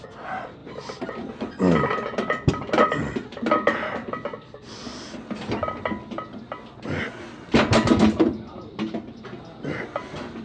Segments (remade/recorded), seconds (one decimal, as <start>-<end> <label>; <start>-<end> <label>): 0.0-4.9 remade; 4.9-10.4 recorded